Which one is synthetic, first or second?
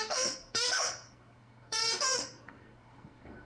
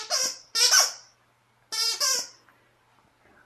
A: first